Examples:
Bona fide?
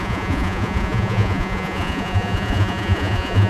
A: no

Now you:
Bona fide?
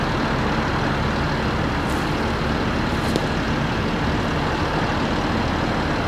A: yes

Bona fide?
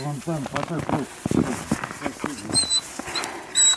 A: yes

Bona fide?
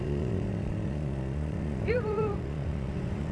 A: no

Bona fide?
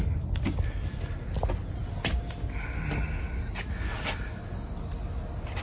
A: yes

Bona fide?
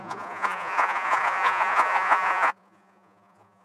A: no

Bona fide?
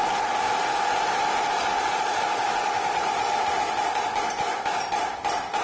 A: yes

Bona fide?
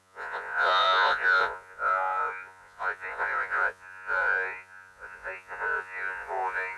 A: no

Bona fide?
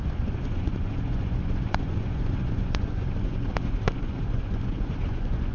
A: no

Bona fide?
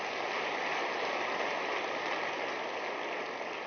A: yes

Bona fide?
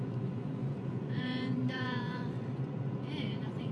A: no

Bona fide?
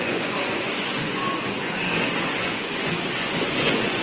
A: no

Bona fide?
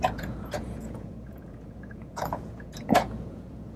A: no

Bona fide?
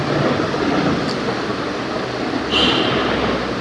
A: yes